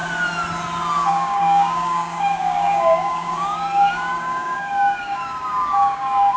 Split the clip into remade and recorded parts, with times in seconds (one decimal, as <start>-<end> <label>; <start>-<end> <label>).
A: 0.0-1.1 recorded; 1.1-6.4 remade